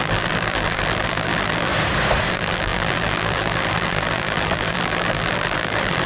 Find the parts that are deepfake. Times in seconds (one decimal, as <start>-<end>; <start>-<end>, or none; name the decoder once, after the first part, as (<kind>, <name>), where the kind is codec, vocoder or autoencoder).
0.0-1.7 (vocoder, BigVGAN v2); 2.3-6.1